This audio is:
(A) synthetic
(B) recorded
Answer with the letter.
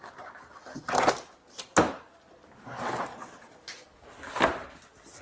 B